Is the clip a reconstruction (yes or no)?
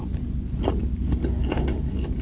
no